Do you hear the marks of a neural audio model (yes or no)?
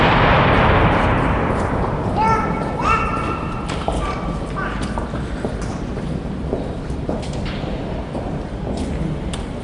no